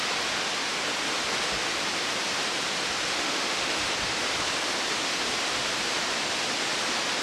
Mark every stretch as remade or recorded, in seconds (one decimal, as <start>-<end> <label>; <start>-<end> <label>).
0.0-3.1 recorded; 3.1-3.9 remade; 3.9-7.2 recorded